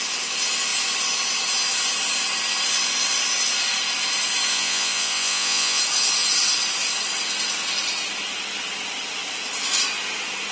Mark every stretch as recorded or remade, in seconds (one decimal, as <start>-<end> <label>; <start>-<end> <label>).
0.0-4.5 recorded; 4.5-5.8 remade; 5.8-10.5 recorded